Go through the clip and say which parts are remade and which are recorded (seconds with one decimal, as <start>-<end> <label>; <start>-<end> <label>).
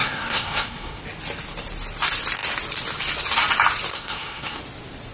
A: 0.0-1.0 remade; 1.0-3.9 recorded; 3.9-4.6 remade; 4.6-5.1 recorded